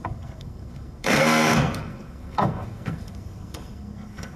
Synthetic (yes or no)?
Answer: yes